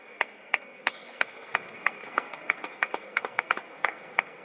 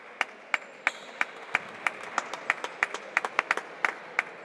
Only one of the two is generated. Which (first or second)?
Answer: first